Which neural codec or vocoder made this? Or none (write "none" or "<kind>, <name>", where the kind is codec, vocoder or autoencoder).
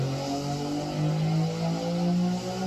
none